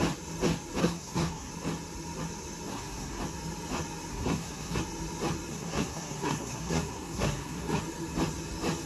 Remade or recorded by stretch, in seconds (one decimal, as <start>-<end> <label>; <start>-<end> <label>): 0.0-0.8 recorded; 0.8-1.5 remade; 1.5-2.7 recorded; 2.7-3.2 remade; 3.2-4.1 recorded; 4.1-4.8 remade; 4.8-5.5 recorded; 5.5-7.8 remade; 7.8-8.9 recorded